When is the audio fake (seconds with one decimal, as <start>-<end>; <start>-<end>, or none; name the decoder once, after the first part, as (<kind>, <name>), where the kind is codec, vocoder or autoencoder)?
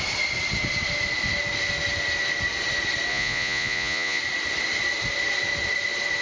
3.1-4.2 (vocoder, Vocos)